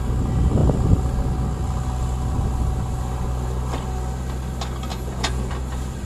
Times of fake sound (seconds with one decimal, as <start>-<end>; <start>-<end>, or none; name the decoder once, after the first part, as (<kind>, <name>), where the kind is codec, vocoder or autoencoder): 4.9-5.5 (vocoder, Vocos)